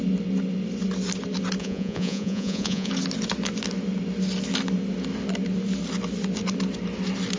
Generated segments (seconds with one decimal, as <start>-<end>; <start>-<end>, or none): 1.6-2.9